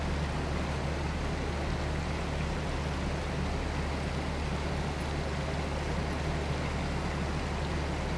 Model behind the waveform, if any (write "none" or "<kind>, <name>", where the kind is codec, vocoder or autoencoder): none